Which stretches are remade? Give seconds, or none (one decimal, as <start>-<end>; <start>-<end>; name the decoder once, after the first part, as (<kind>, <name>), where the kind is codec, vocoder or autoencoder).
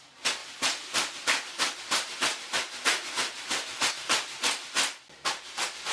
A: none